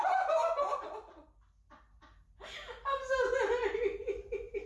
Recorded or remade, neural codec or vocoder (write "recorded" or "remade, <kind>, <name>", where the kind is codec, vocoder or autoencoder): recorded